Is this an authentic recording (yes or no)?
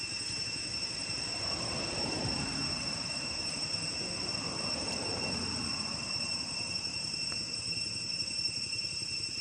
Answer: no